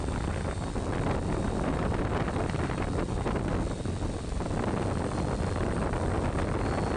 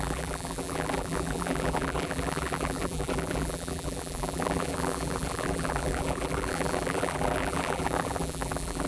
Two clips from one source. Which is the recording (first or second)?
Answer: first